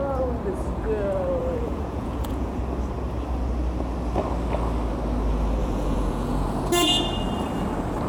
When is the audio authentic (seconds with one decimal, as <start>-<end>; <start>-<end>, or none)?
0.0-1.4; 2.6-5.6; 6.6-8.1